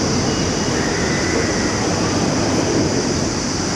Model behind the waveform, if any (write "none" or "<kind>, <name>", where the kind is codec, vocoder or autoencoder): none